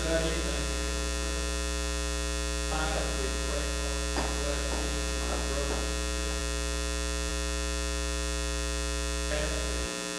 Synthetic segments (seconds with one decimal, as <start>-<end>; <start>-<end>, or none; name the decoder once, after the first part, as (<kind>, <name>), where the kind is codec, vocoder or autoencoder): none